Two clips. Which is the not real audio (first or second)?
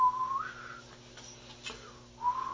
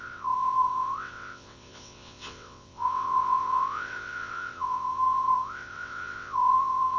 second